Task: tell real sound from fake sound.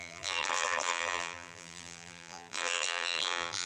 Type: fake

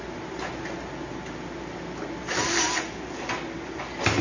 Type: real